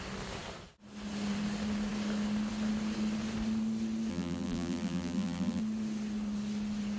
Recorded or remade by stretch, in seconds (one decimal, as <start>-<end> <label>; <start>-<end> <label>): 0.0-4.1 recorded; 4.1-5.6 remade; 5.6-7.0 recorded

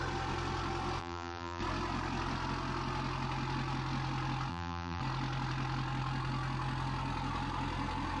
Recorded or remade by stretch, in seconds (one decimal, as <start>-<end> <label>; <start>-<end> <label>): 0.0-1.0 recorded; 1.0-1.6 remade; 1.6-4.5 recorded; 4.5-5.0 remade; 5.0-8.2 recorded

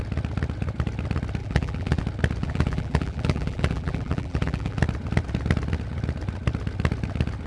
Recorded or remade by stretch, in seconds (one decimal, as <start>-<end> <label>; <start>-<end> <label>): 0.0-1.4 recorded; 1.4-2.0 remade; 2.0-2.4 recorded; 2.4-4.8 remade; 4.8-7.5 recorded

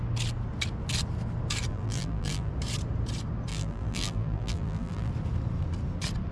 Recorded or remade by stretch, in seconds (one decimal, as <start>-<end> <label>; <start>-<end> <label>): 0.0-1.7 recorded; 1.7-2.5 remade; 2.5-3.5 recorded; 3.5-5.1 remade; 5.1-6.3 recorded

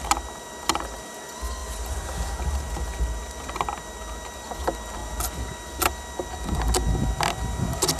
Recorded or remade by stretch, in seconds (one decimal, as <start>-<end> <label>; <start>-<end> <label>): 0.0-1.6 recorded; 1.6-2.3 remade; 2.3-5.0 recorded; 5.0-5.8 remade; 5.8-8.0 recorded